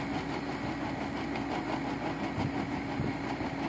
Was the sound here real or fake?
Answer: real